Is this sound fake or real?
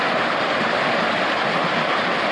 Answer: real